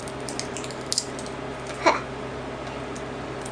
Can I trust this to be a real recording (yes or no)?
yes